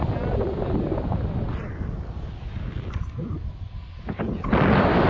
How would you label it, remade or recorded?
recorded